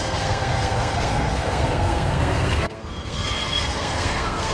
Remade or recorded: remade